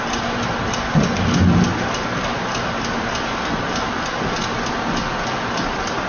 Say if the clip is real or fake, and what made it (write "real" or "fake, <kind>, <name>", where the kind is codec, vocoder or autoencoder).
real